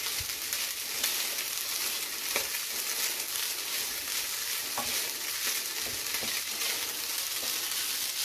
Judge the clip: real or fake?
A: real